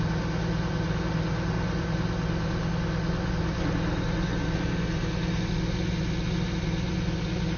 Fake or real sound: real